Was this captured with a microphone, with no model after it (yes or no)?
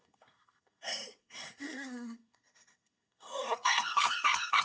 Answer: no